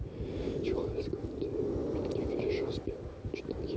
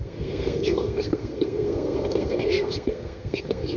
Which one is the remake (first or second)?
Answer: second